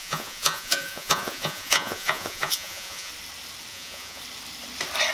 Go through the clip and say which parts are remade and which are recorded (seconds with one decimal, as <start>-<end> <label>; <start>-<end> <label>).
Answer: 0.0-3.1 remade; 3.1-3.7 recorded; 3.7-4.2 remade; 4.2-5.1 recorded